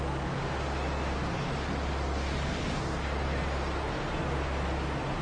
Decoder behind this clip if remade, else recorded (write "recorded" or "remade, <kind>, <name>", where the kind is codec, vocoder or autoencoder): recorded